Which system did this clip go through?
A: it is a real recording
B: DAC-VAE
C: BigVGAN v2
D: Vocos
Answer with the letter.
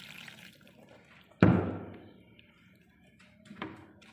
C